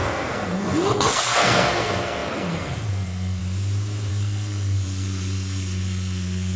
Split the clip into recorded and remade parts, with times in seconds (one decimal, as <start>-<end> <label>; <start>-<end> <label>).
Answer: 0.0-3.4 remade; 3.4-4.1 recorded; 4.1-6.6 remade